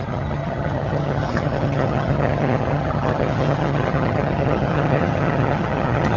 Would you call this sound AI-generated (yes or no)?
yes